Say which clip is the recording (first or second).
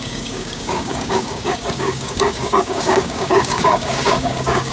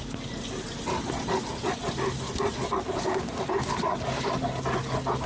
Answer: second